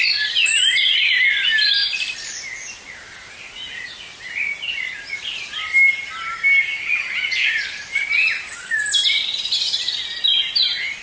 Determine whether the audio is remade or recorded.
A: recorded